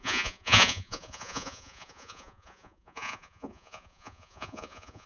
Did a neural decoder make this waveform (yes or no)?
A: yes